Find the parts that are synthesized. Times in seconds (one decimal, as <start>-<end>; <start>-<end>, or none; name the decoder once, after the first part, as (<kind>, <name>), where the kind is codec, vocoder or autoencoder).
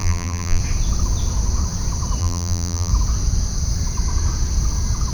0.0-0.6 (vocoder, BigVGAN v2); 2.2-2.9